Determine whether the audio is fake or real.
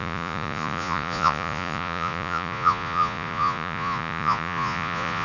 fake